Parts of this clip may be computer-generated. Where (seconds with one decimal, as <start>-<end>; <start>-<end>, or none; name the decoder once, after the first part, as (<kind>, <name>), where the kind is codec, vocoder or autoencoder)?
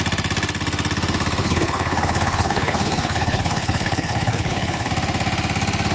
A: 1.4-4.9 (codec, HILCodec)